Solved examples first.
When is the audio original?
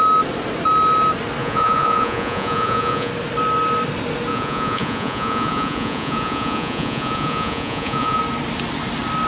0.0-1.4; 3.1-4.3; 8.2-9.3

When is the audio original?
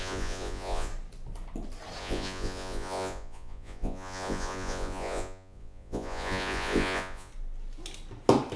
0.9-2.0; 7.3-8.6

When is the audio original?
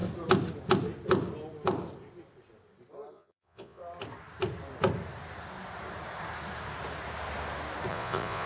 0.0-3.1; 3.8-7.9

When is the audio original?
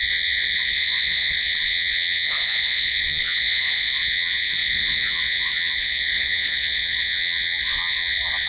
none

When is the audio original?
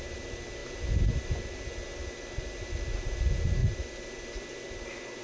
0.0-5.2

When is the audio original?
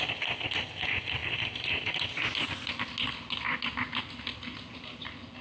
0.0-5.4